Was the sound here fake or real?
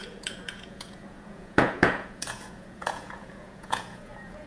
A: fake